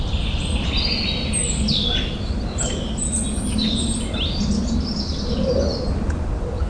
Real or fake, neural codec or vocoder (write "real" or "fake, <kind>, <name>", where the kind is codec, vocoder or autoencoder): real